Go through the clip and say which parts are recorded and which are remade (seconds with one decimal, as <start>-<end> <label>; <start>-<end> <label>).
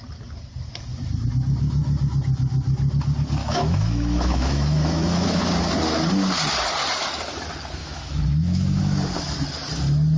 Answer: 0.0-3.4 recorded; 3.4-5.4 remade; 5.4-7.8 recorded; 7.8-8.8 remade; 8.8-10.2 recorded